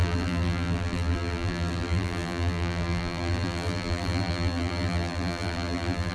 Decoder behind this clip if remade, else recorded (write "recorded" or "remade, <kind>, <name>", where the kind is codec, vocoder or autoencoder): remade, vocoder, BigVGAN v2